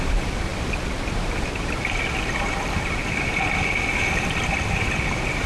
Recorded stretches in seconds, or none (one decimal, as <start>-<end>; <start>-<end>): 0.0-5.5